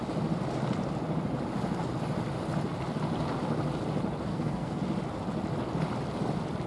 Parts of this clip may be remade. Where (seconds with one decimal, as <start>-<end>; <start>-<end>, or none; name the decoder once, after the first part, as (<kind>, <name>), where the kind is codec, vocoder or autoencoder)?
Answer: 4.3-4.8 (codec, SNAC)